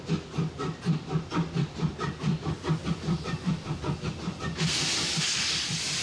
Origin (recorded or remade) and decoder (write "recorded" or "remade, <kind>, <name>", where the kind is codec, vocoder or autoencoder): recorded